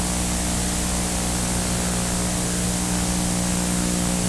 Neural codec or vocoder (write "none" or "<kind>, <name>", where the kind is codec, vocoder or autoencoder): none